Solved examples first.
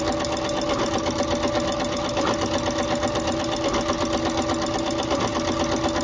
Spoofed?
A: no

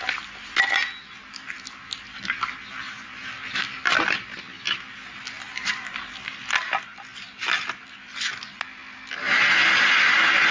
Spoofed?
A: no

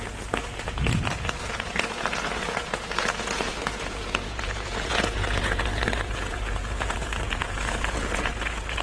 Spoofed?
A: yes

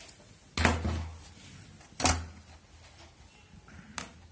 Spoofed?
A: no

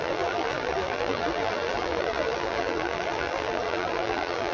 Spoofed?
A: yes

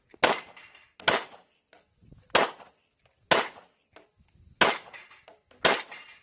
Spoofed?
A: no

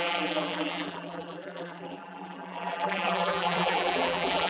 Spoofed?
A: yes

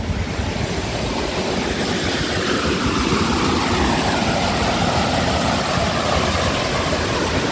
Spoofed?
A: no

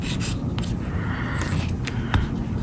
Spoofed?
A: no